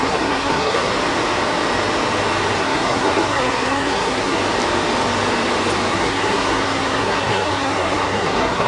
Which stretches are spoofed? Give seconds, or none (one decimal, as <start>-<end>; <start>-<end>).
0.0-0.9; 2.6-4.4; 5.9-8.7